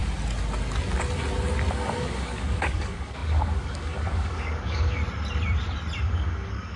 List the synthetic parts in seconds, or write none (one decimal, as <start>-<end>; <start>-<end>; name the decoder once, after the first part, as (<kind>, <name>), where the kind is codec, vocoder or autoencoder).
1.7-5.0 (codec, DAC); 6.0-6.8